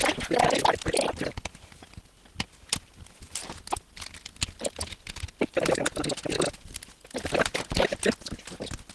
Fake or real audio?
real